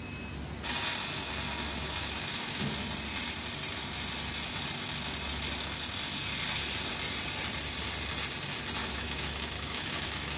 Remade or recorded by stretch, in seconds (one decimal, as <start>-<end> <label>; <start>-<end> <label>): 0.0-2.0 recorded; 2.0-2.6 remade; 2.6-8.8 recorded; 8.8-10.4 remade